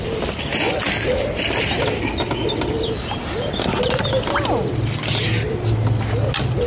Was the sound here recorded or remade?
recorded